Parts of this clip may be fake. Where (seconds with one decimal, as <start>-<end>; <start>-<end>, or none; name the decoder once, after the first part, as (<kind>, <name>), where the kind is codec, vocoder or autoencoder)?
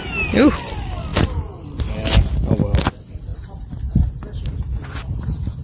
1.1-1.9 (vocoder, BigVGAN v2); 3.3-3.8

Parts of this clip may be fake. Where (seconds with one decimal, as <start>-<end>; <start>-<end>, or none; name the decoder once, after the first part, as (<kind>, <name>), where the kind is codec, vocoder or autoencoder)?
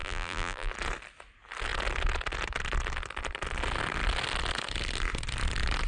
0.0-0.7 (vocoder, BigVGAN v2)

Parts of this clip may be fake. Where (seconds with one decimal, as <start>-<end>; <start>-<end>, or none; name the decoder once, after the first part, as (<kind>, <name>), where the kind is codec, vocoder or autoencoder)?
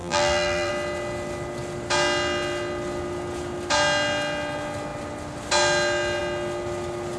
0.0-0.7 (vocoder, BigVGAN v2)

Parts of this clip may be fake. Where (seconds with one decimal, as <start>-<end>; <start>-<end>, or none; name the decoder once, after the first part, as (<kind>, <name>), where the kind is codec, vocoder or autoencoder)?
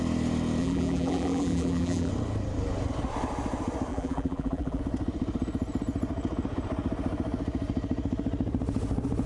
0.6-2.1 (vocoder, BigVGAN v2); 3.9-4.8